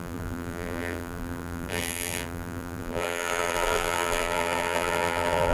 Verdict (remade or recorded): remade